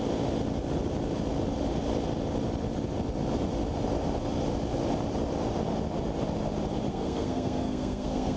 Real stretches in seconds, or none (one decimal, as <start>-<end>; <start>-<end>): 0.0-6.9